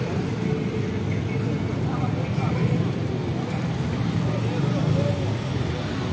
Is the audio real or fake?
real